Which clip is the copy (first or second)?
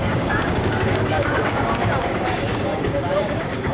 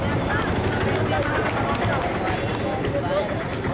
first